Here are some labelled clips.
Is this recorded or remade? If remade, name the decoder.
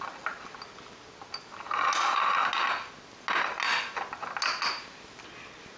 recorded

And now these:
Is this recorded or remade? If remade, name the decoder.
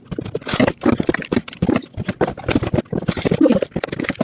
recorded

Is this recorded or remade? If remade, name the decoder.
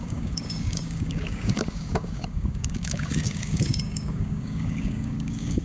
remade, codec, DAC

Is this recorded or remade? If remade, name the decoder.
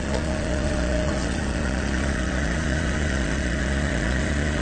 remade, vocoder, Vocos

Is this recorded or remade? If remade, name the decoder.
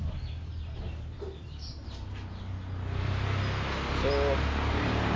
recorded